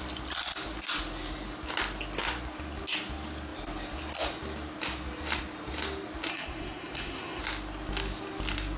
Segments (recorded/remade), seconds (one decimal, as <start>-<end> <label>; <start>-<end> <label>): 0.0-6.3 recorded; 6.3-7.4 remade; 7.4-8.8 recorded